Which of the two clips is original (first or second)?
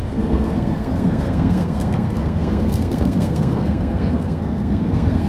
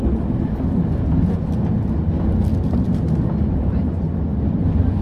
second